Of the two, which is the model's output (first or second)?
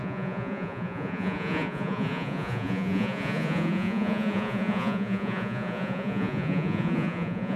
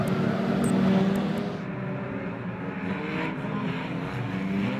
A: first